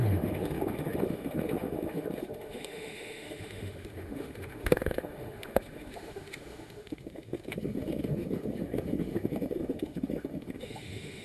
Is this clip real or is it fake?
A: fake